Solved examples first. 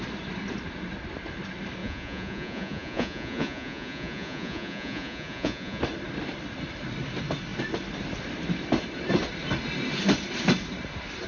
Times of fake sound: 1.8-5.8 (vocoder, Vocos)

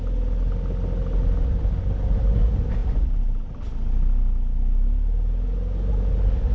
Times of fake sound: none

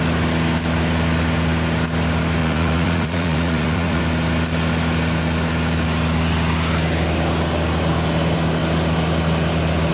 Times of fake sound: 2.4-4.0 (vocoder, Vocos)

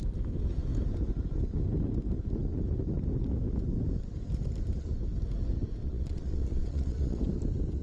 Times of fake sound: 5.8-7.2 (vocoder, Vocos)

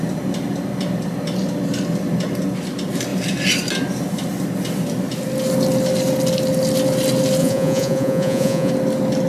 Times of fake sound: 7.4-8.7 (vocoder, Vocos)

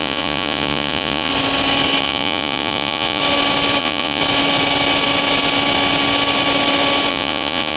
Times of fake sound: 0.0-1.3 (vocoder, Vocos); 2.0-3.2; 3.8-4.2; 7.1-7.8